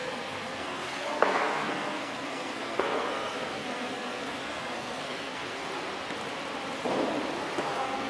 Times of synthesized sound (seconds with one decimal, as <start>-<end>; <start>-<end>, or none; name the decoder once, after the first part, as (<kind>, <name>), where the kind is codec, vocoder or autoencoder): 0.0-5.6 (codec, SNAC); 7.6-8.1